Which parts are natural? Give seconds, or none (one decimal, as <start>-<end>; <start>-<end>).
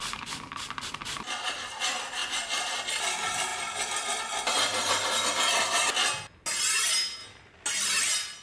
0.0-8.4